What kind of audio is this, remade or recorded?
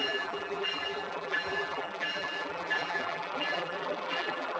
remade